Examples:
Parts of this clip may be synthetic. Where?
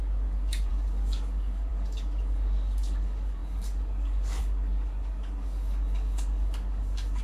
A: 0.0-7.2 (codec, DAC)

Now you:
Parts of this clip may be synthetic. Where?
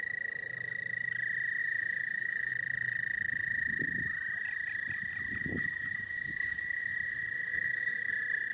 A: 1.6-2.5 (codec, DAC); 5.4-6.9; 7.5-8.1